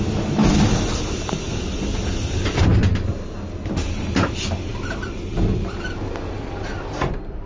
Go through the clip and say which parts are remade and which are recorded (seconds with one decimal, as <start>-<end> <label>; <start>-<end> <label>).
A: 0.0-7.5 recorded